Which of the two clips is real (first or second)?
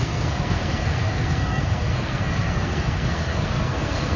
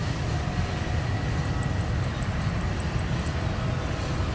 second